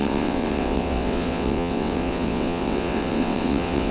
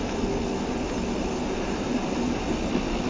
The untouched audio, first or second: second